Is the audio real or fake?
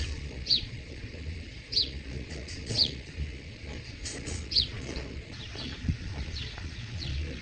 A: fake